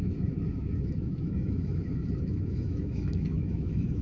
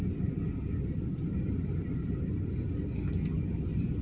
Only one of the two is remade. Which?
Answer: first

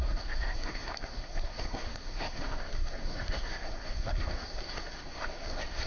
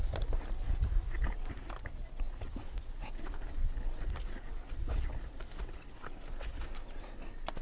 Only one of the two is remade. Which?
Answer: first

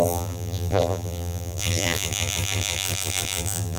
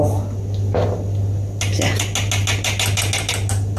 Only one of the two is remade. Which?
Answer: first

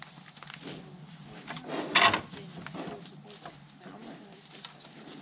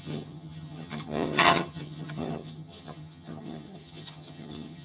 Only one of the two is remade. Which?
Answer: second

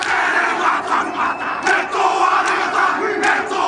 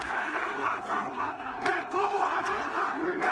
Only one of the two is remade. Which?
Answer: second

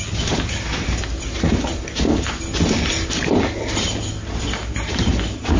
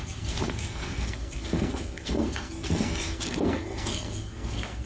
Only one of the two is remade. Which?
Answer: second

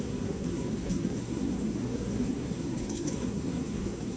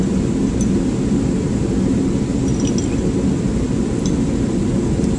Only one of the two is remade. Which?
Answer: first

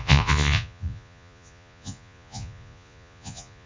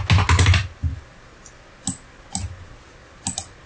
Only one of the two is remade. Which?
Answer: first